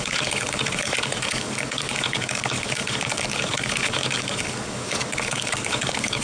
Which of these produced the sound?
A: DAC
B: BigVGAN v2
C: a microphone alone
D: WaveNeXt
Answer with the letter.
A